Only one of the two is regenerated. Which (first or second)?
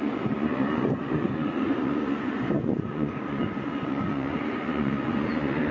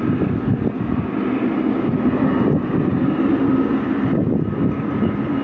first